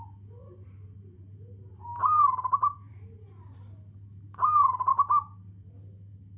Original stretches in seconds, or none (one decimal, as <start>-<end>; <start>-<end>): 0.0-0.4; 3.6-6.4